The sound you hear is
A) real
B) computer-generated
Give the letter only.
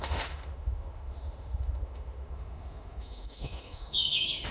B